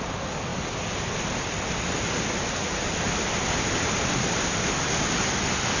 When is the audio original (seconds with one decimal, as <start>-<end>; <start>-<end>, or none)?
0.0-5.8